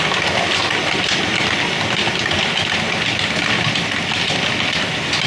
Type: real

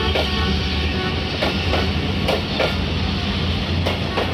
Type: real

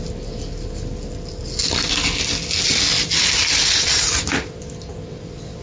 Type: real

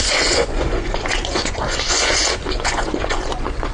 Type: fake